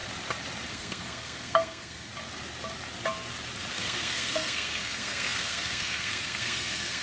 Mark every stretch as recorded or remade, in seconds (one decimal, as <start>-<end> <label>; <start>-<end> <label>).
0.0-0.7 recorded; 0.7-2.1 remade; 2.1-3.7 recorded; 3.7-7.0 remade